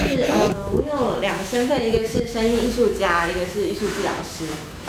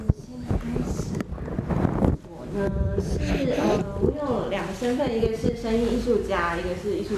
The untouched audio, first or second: second